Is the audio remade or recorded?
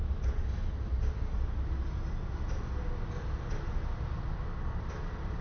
recorded